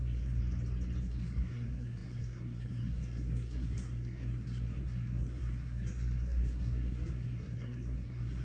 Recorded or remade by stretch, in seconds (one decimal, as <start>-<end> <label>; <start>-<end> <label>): 0.0-0.4 remade; 0.4-1.0 recorded; 1.0-8.4 remade